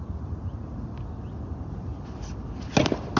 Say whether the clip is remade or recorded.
recorded